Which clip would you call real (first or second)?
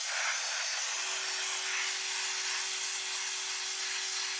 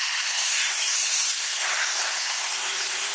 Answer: first